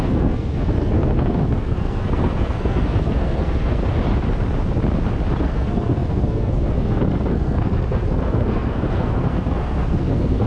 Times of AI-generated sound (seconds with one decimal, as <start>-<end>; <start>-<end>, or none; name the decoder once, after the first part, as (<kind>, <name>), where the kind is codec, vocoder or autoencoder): 0.0-3.8 (codec, SNAC); 5.4-10.5